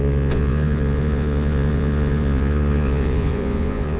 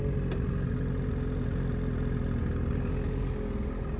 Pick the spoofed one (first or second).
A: first